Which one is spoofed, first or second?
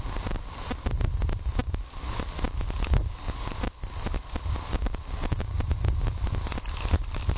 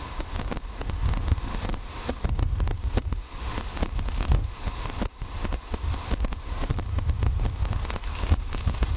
second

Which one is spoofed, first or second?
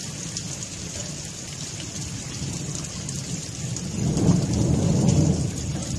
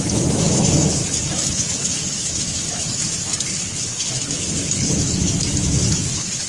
second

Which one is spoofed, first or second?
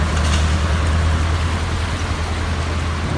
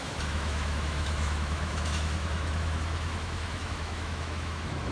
second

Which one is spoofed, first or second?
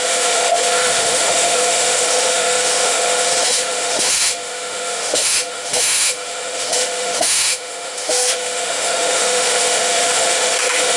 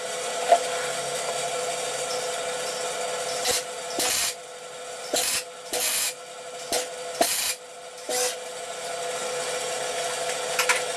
first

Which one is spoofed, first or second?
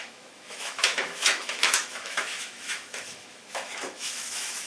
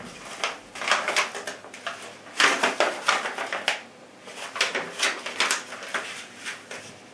first